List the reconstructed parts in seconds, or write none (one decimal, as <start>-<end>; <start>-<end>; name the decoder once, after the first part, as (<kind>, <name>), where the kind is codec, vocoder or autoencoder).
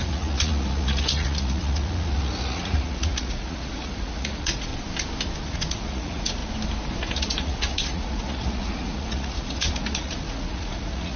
0.0-4.7 (vocoder, Vocos); 5.4-6.4; 7.0-11.2